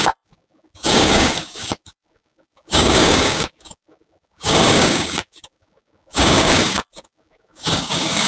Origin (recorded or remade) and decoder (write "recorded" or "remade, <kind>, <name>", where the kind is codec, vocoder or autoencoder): remade, codec, DAC